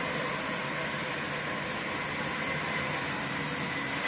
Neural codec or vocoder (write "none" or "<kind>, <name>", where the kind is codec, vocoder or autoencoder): none